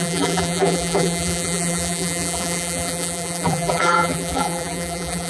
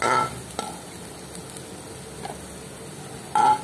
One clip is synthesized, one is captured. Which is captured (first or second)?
second